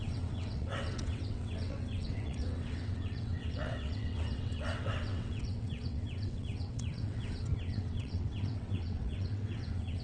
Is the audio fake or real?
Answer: fake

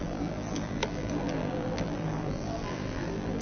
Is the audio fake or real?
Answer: fake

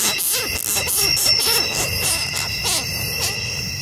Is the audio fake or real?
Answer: real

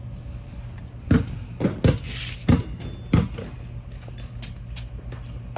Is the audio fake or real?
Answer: real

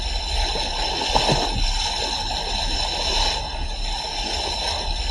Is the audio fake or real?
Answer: real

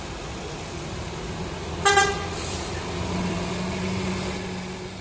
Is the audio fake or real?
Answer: real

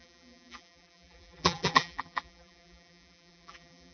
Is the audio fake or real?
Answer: fake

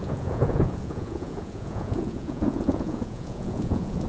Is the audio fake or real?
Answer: fake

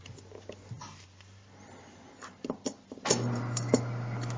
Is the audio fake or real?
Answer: real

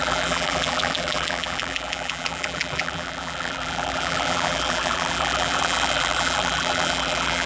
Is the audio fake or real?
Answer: fake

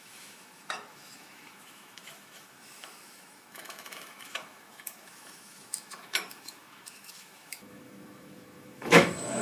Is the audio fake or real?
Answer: fake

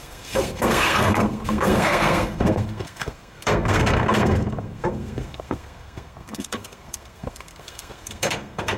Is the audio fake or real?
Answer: fake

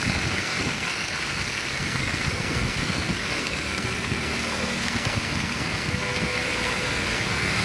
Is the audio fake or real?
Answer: fake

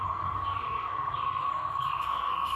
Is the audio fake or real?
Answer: fake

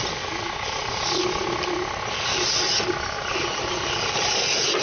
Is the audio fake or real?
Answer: real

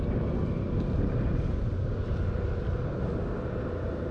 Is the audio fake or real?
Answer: real